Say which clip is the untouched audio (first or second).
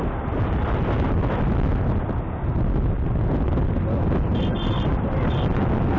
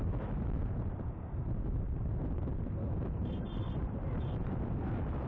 first